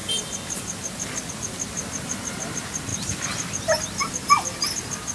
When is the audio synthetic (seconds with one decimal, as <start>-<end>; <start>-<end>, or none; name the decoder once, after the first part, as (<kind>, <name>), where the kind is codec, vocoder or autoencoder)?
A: none